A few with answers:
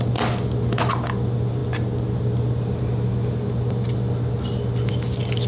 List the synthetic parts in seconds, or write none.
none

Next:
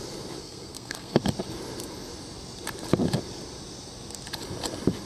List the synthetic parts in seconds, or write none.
0.4-1.2 (codec, SNAC)

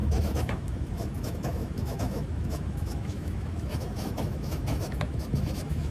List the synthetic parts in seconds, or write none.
0.0-5.9 (autoencoder, DAC-VAE)

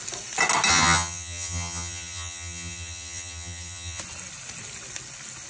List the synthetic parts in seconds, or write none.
0.7-4.0 (vocoder, HiFi-GAN)

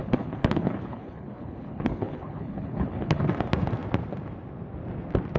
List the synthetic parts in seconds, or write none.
0.0-3.2 (codec, HILCodec)

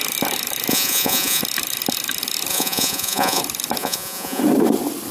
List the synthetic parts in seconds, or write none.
0.7-1.4 (vocoder, Vocos); 2.5-3.4; 3.8-4.4

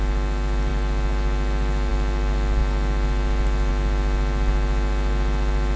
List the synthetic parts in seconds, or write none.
none

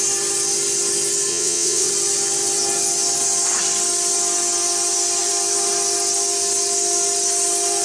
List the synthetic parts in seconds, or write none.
1.3-1.9 (vocoder, WaveNeXt)